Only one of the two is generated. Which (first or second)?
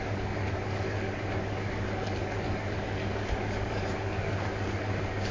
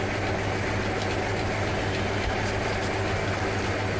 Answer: first